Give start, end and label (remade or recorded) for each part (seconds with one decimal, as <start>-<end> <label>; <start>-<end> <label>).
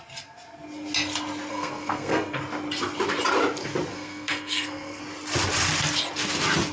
0.0-1.5 recorded; 1.5-2.4 remade; 2.4-3.9 recorded; 3.9-5.0 remade; 5.0-6.7 recorded